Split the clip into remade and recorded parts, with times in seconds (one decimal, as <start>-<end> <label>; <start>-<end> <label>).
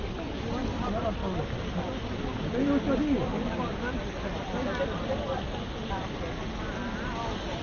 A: 0.0-7.6 recorded